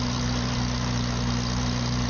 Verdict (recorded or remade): recorded